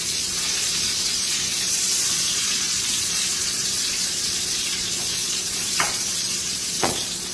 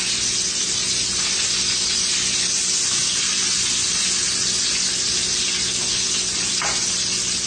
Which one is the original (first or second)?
second